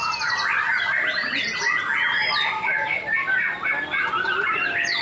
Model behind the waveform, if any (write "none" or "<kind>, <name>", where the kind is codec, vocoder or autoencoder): none